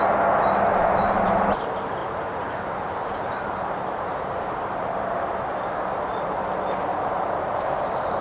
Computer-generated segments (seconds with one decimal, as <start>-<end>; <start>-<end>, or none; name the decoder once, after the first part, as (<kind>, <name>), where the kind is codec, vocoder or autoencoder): 0.7-1.2 (vocoder, BigVGAN v2); 2.0-5.8; 6.9-8.2

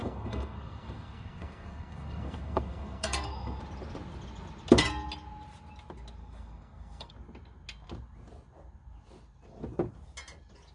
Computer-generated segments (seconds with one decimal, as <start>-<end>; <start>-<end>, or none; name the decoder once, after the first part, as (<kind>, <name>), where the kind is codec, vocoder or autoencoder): 0.0-3.6 (codec, SNAC); 6.2-7.1

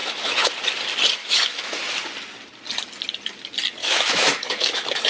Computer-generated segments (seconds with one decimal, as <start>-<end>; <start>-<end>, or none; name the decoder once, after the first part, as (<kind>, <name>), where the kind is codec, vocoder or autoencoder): 0.0-0.5 (autoencoder, DAC-VAE); 1.2-1.8; 3.8-5.1

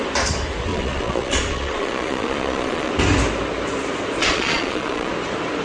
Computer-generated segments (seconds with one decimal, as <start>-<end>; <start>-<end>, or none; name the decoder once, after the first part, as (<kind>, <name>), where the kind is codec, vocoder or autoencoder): 0.7-2.9 (vocoder, Vocos); 4.2-5.1

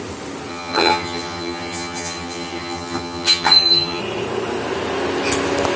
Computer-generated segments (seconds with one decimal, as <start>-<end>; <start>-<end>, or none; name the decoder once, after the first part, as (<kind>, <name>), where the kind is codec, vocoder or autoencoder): 0.5-4.0 (vocoder, HiFi-GAN)

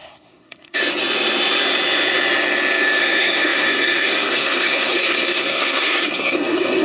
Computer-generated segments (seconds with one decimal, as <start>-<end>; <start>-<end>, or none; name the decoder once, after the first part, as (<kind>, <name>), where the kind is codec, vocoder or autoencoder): 0.0-0.8 (codec, SNAC); 3.0-6.8